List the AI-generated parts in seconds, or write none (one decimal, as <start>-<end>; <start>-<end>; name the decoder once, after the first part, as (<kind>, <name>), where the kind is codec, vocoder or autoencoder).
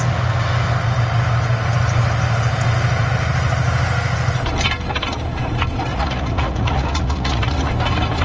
5.9-7.7 (vocoder, Vocos)